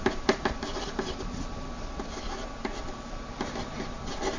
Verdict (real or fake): real